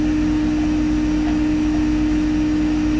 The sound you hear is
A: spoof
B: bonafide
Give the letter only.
B